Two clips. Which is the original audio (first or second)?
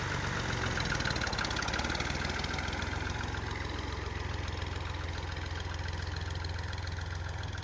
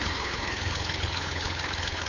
first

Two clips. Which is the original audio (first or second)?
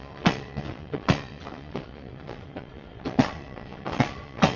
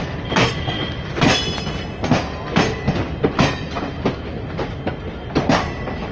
second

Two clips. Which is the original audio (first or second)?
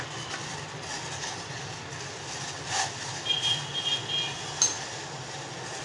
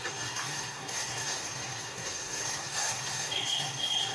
first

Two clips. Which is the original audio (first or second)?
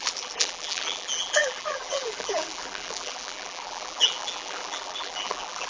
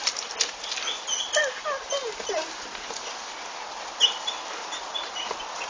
second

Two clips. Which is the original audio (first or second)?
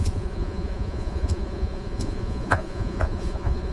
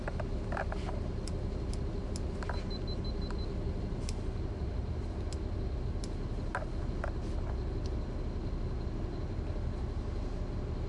second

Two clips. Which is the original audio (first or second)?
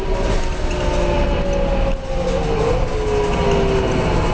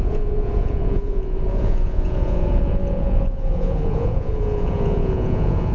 first